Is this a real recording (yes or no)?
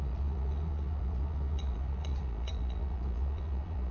no